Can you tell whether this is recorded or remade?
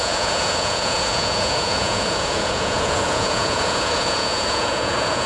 remade